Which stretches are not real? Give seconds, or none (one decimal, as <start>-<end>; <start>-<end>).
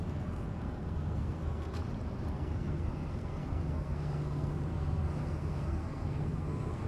0.0-1.8; 2.3-6.9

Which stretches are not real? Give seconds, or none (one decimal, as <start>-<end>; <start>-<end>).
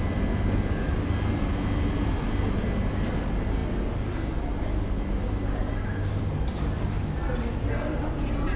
none